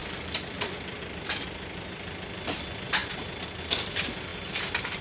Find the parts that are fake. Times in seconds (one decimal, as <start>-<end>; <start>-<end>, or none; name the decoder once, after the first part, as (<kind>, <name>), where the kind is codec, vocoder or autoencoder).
none